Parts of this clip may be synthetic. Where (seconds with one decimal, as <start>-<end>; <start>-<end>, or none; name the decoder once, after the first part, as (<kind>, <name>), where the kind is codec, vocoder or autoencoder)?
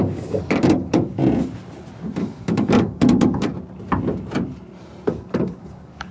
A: 0.0-1.2 (codec, DAC); 2.2-3.5; 5.1-6.1